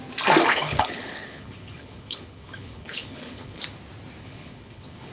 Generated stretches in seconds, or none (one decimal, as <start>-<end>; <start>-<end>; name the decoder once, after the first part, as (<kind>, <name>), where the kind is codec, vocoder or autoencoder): 0.5-3.6 (codec, HILCodec); 4.2-5.1

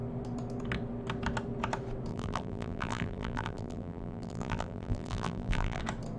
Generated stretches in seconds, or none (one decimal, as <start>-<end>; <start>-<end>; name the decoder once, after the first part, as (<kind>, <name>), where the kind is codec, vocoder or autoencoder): 2.1-5.8 (vocoder, BigVGAN v2)